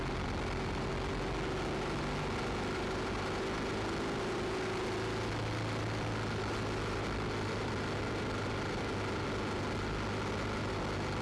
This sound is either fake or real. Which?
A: real